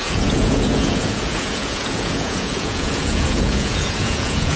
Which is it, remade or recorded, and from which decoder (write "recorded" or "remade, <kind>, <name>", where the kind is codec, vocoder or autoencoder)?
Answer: remade, vocoder, Vocos